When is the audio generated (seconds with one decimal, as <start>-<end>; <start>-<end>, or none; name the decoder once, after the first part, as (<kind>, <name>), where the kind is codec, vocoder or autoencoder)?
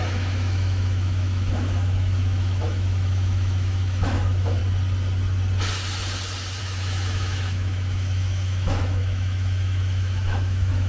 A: 0.0-4.6 (autoencoder, DAC-VAE); 6.6-10.9